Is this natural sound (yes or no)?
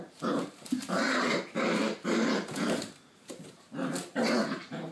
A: no